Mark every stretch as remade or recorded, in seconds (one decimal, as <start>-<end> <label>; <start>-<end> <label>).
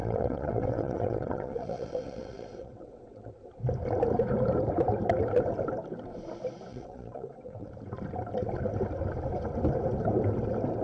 0.0-3.3 remade; 3.3-6.7 recorded; 6.7-7.7 remade; 7.7-10.8 recorded